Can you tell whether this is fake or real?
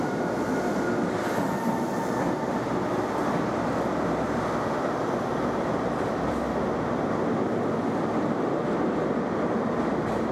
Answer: real